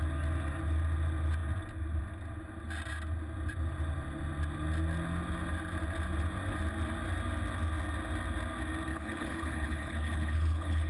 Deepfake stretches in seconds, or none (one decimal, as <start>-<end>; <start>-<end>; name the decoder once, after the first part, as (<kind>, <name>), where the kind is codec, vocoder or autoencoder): 8.9-10.9 (codec, HILCodec)

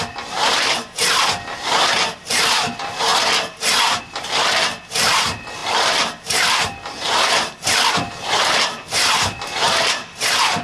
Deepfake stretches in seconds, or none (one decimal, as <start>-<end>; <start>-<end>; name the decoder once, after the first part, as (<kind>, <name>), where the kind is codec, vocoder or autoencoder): none